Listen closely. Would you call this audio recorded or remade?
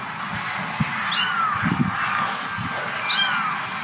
recorded